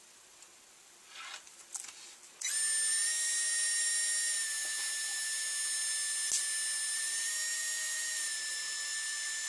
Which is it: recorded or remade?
recorded